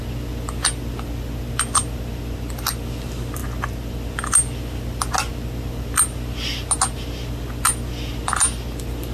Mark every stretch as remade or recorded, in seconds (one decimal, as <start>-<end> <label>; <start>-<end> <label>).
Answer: 0.0-9.1 recorded